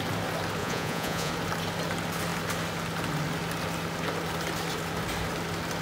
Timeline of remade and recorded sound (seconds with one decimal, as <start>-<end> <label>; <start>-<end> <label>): 0.0-0.6 recorded; 0.6-1.3 remade; 1.3-5.8 recorded